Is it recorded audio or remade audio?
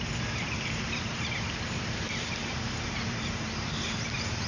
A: remade